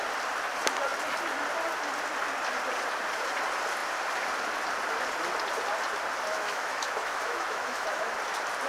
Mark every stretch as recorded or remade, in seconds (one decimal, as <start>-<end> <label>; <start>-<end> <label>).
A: 0.0-6.3 recorded; 6.3-8.1 remade; 8.1-8.7 recorded